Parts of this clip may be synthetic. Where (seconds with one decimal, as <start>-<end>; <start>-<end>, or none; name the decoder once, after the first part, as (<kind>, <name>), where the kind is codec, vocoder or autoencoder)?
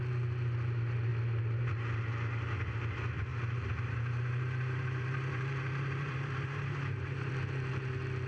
3.3-7.3 (vocoder, BigVGAN v2)